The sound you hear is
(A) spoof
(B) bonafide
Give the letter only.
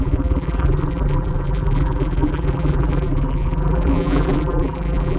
A